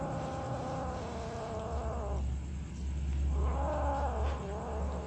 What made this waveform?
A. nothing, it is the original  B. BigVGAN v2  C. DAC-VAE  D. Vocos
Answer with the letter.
A